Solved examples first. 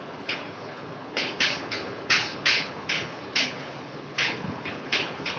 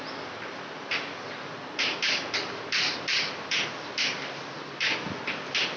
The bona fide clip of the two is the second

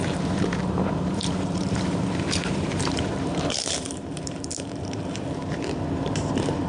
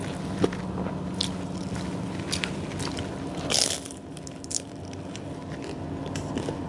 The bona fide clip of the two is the second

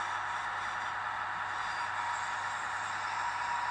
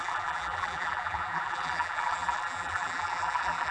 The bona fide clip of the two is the first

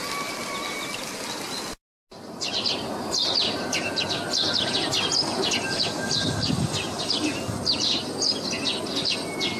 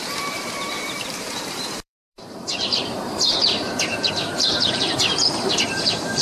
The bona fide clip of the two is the first